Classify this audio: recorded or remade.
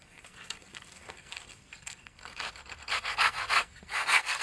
remade